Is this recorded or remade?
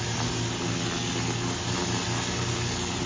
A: recorded